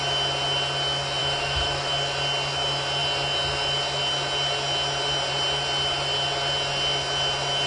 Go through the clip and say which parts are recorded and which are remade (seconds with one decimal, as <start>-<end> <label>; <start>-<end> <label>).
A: 0.0-1.2 recorded; 1.2-1.9 remade; 1.9-7.7 recorded

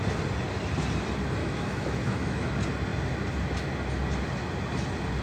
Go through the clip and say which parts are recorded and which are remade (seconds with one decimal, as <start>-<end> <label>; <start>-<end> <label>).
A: 0.0-1.4 recorded; 1.4-2.5 remade; 2.5-5.2 recorded

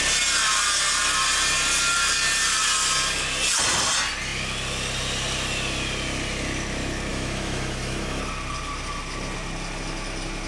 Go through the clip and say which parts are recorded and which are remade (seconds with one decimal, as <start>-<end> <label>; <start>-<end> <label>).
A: 0.0-7.1 recorded; 7.1-8.2 remade; 8.2-10.5 recorded

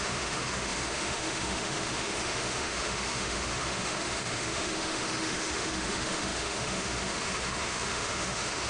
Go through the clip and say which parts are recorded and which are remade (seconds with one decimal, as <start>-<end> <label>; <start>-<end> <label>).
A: 0.0-8.7 remade

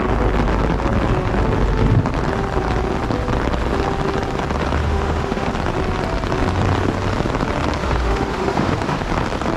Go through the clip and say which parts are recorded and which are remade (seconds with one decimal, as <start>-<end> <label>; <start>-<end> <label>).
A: 0.0-4.8 recorded; 4.8-5.5 remade; 5.5-7.8 recorded; 7.8-9.1 remade; 9.1-9.6 recorded

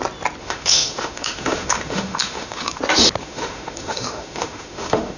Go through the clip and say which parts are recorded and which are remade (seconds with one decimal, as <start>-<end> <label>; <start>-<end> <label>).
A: 0.0-0.4 recorded; 0.4-2.8 remade; 2.8-3.2 recorded; 3.2-5.2 remade

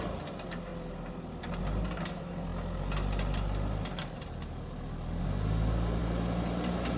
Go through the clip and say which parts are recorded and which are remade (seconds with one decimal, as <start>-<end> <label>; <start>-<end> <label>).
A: 0.0-7.0 recorded

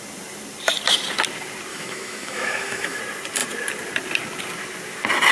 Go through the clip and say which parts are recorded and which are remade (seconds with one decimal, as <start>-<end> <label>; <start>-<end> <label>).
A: 0.0-1.7 recorded; 1.7-3.0 remade; 3.0-5.3 recorded